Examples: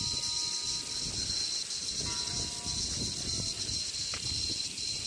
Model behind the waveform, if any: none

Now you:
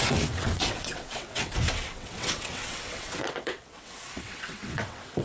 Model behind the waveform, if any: vocoder, WaveNeXt